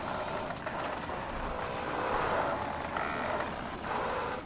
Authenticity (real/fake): real